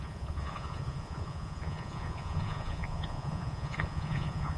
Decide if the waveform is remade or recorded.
remade